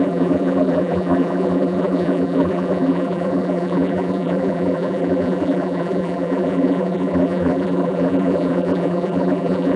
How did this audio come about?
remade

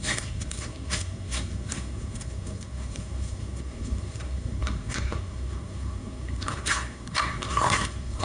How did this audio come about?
remade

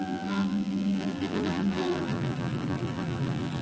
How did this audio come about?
remade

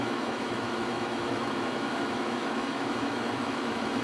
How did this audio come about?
remade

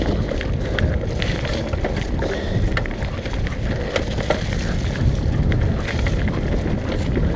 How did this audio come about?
recorded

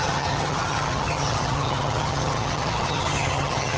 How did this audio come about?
remade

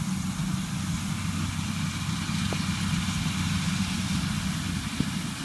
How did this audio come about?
recorded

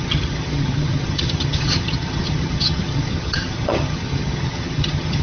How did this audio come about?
remade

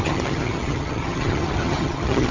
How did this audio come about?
remade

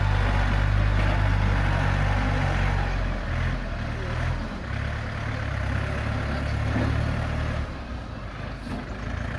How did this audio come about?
recorded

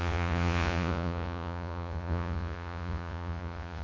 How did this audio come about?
remade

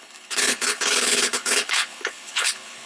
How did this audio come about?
remade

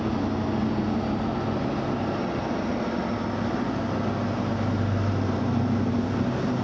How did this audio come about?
recorded